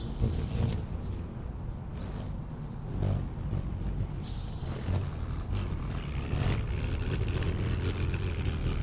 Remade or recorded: recorded